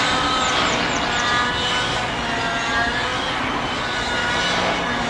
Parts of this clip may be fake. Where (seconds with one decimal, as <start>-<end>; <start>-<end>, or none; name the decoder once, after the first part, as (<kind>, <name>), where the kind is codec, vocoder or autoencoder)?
none